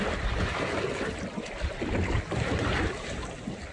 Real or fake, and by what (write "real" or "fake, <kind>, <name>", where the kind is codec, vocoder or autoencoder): real